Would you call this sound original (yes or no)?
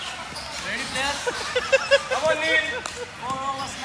yes